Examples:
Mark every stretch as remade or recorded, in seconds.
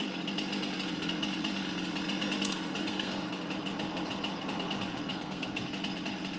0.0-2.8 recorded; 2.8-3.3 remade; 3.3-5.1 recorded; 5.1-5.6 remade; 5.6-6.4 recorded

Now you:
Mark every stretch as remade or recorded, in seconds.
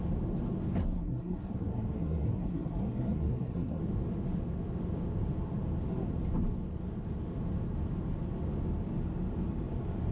0.0-0.8 recorded; 0.8-3.8 remade; 3.8-10.1 recorded